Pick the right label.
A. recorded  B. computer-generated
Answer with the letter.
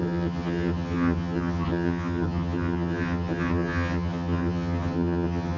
B